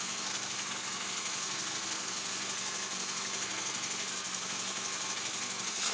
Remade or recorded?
remade